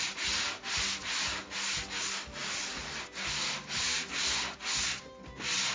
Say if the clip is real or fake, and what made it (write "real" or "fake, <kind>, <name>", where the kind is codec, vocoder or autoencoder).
real